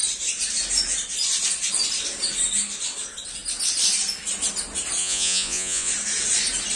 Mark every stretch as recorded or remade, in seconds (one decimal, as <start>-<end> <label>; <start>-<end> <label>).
0.0-5.0 recorded; 5.0-5.9 remade; 5.9-6.8 recorded